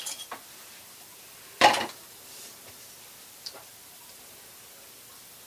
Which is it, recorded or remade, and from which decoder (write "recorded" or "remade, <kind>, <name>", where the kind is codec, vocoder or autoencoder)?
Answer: remade, vocoder, BigVGAN v2